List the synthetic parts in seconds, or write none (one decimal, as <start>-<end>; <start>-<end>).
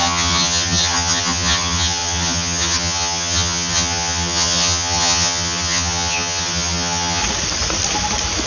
0.0-7.2